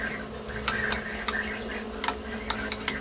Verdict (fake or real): real